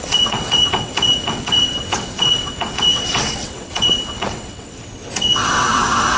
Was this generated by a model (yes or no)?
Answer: yes